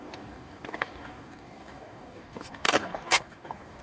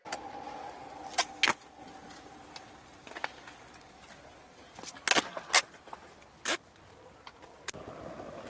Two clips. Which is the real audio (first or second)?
second